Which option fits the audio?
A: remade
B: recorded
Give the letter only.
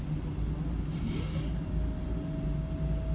B